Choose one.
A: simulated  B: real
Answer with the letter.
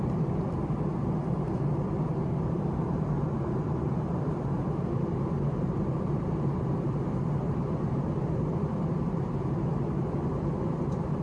A